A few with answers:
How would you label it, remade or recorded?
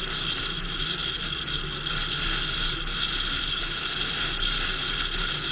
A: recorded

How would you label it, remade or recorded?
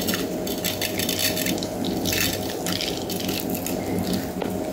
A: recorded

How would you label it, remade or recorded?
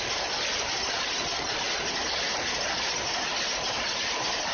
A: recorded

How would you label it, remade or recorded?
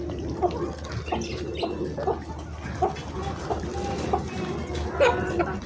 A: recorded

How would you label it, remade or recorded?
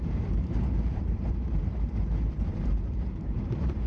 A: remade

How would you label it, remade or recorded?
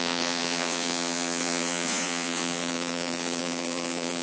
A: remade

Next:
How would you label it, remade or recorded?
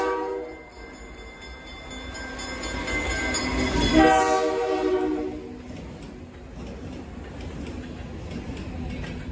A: recorded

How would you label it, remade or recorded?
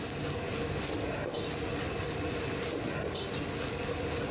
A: recorded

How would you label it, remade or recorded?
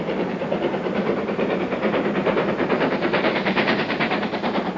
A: remade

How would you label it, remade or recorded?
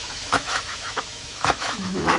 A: remade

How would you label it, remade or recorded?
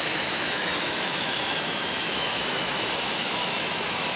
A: remade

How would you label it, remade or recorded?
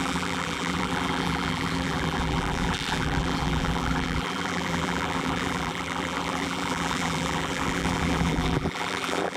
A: remade